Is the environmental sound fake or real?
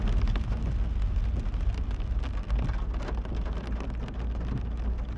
real